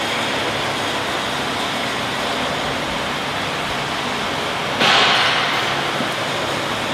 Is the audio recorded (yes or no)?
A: yes